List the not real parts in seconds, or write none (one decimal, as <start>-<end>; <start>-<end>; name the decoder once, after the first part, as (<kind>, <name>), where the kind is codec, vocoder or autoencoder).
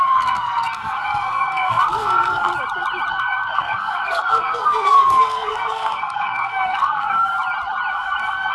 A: 0.0-2.5 (codec, SNAC); 3.1-7.3; 7.9-8.5